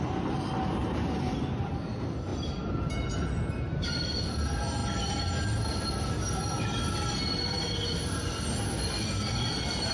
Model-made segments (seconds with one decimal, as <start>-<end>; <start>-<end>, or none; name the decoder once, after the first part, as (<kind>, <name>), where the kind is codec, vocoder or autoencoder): none